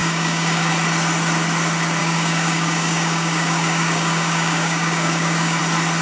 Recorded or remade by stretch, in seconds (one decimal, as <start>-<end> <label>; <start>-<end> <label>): 0.0-0.7 remade; 0.7-2.0 recorded; 2.0-5.6 remade; 5.6-6.0 recorded